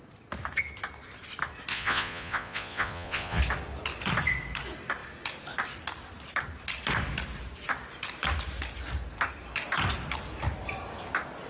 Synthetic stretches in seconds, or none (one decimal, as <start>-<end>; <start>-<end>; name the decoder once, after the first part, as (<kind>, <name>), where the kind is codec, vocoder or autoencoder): 1.7-3.4 (vocoder, Vocos)